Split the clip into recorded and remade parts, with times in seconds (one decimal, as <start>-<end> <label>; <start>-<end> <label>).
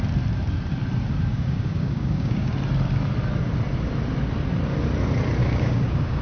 0.0-1.3 recorded; 1.3-2.5 remade; 2.5-5.4 recorded; 5.4-6.2 remade